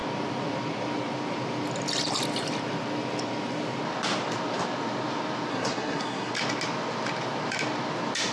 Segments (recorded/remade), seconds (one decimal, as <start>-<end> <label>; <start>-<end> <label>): 0.0-5.5 recorded; 5.5-6.3 remade; 6.3-8.3 recorded